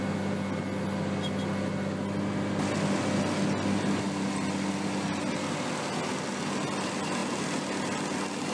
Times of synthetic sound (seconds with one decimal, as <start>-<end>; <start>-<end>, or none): none